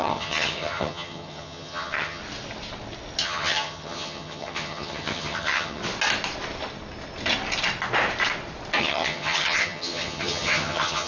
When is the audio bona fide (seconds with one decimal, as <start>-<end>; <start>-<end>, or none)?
2.2-3.2; 5.8-8.8